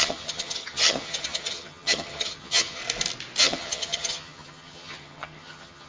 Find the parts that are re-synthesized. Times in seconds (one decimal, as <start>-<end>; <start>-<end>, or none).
0.0-2.8; 3.4-5.9